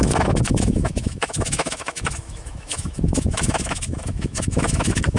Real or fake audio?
fake